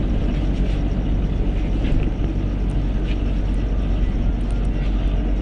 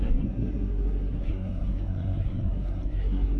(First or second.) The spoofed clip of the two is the second